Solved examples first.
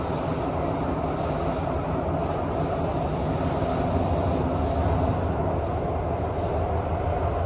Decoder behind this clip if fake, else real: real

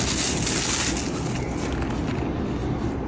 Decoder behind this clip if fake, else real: real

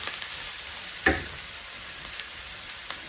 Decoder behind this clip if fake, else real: fake, vocoder, BigVGAN v2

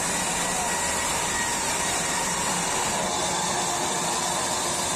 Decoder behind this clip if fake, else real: fake, vocoder, BigVGAN v2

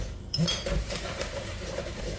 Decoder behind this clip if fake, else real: fake, vocoder, BigVGAN v2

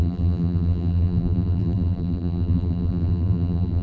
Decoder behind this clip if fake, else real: fake, vocoder, BigVGAN v2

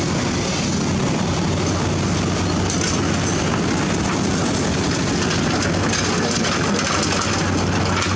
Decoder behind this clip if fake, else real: real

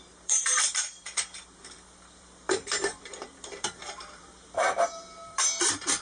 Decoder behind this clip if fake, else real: fake, vocoder, BigVGAN v2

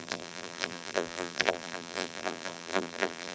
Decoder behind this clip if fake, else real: fake, vocoder, BigVGAN v2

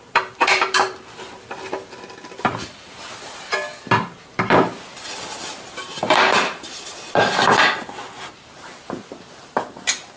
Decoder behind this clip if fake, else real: fake, vocoder, BigVGAN v2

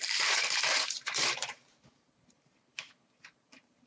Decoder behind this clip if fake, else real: fake, vocoder, BigVGAN v2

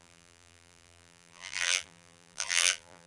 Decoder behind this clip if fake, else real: fake, vocoder, BigVGAN v2